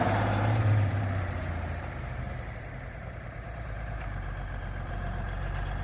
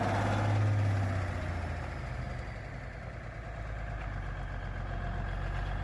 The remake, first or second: first